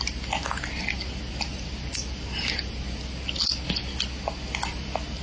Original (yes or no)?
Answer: yes